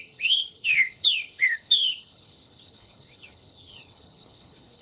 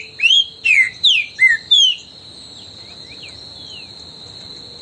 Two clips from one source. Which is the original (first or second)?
second